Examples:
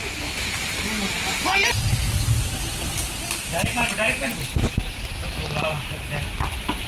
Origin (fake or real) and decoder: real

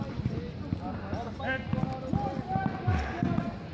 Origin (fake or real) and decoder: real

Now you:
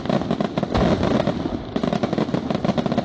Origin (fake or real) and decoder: real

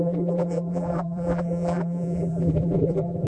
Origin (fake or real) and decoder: fake, vocoder, BigVGAN v2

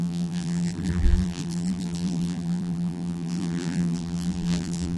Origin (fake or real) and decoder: fake, vocoder, BigVGAN v2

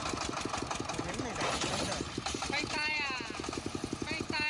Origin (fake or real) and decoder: real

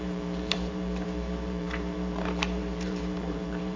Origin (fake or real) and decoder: fake, vocoder, BigVGAN v2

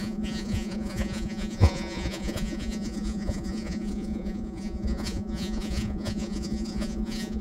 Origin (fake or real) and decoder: fake, vocoder, Vocos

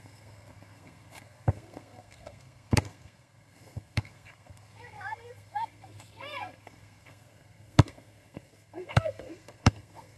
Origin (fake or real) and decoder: fake, codec, SNAC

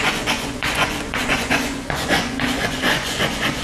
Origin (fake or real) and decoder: fake, vocoder, Vocos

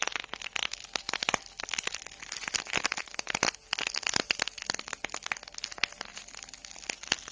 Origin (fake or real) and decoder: real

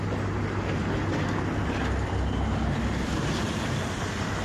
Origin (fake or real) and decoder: real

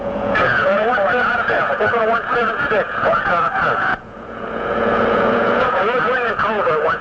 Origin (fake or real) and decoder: fake, vocoder, Vocos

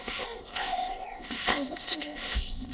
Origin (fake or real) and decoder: fake, codec, ZipCodec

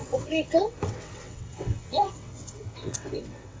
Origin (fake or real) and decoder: fake, vocoder, WaveNeXt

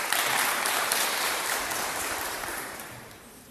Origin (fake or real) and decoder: fake, vocoder, BigVGAN v2